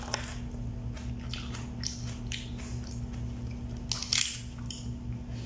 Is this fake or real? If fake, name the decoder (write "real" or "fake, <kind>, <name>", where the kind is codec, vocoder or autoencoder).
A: real